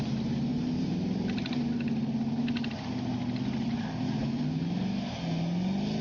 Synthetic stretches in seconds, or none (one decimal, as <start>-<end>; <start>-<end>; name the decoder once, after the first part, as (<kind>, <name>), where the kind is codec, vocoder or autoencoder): 0.5-1.7 (vocoder, BigVGAN v2)